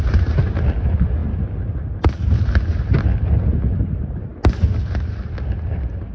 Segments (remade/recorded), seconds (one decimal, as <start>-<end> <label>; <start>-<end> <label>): 0.0-6.1 recorded